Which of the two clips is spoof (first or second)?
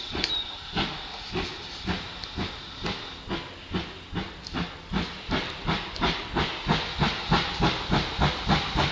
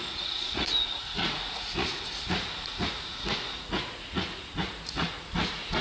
second